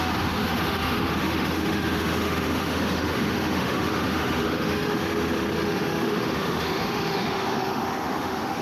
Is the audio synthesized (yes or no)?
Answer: yes